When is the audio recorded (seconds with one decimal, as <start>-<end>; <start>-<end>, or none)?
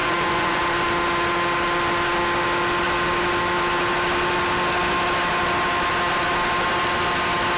0.6-7.6